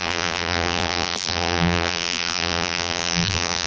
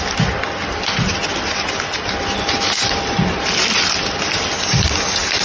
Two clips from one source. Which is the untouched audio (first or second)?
second